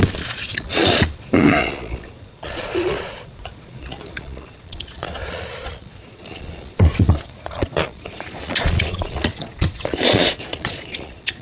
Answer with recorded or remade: remade